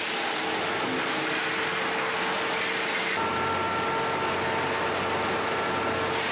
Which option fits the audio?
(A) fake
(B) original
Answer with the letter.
B